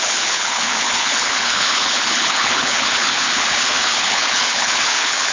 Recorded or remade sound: remade